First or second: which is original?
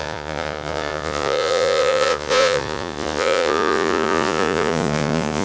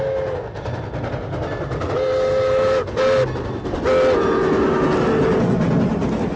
second